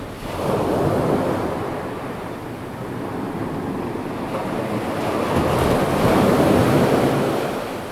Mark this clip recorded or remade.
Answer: recorded